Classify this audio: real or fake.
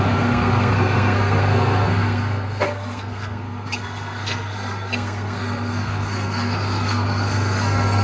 fake